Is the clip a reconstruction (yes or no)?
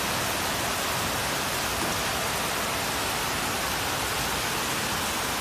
no